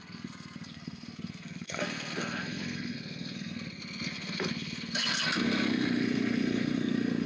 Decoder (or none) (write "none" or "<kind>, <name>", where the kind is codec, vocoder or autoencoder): codec, SNAC